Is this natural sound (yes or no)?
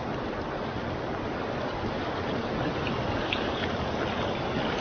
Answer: yes